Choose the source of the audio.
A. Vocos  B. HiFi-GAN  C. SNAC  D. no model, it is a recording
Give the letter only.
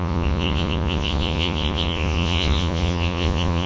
A